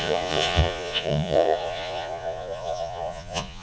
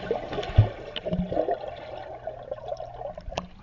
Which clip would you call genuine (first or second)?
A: second